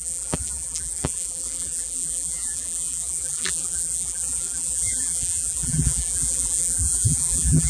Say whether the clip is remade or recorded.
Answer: remade